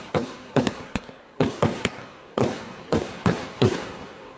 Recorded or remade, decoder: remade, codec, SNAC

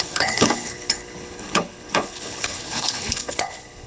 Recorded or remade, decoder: remade, codec, HILCodec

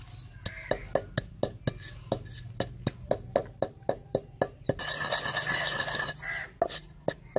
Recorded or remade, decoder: recorded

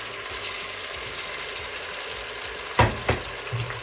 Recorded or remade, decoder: recorded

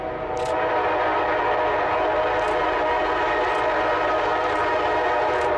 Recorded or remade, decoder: recorded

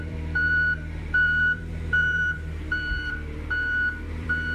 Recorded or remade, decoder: remade, vocoder, BigVGAN v2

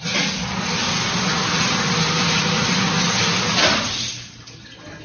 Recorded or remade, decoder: recorded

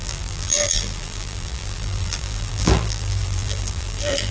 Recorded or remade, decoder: remade, vocoder, BigVGAN v2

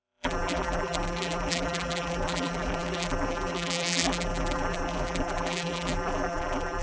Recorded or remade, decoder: remade, vocoder, BigVGAN v2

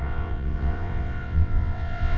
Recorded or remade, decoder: remade, vocoder, WaveNeXt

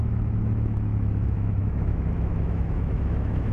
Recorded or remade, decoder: remade, autoencoder, DAC-VAE